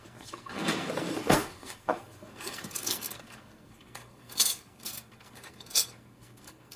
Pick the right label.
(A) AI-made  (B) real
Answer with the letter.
A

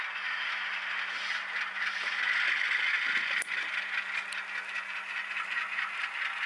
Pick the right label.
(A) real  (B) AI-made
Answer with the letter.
A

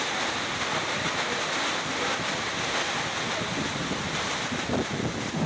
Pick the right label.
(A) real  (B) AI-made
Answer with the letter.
A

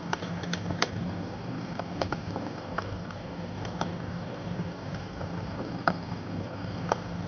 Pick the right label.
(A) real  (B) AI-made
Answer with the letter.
B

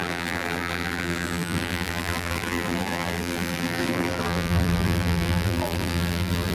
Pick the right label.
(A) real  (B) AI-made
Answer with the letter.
B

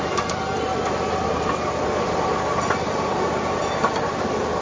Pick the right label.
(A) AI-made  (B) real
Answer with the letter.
B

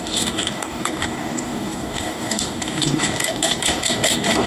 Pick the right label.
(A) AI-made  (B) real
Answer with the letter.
A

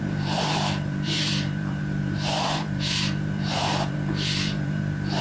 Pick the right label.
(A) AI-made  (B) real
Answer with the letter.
A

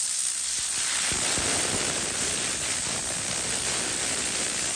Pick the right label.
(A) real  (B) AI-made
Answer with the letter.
A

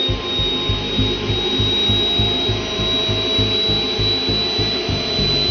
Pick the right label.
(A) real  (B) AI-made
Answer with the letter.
A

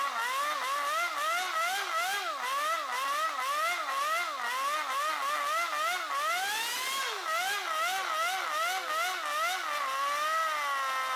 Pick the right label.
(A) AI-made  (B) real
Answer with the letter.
B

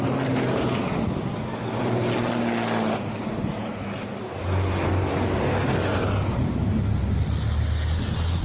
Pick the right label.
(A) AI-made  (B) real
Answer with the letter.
B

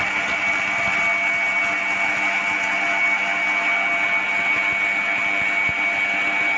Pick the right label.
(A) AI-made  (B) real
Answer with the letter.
B